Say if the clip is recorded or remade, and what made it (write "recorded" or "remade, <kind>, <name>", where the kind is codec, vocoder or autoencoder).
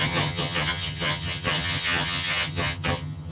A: remade, vocoder, HiFi-GAN